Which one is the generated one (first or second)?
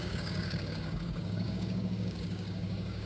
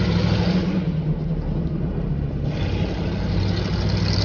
first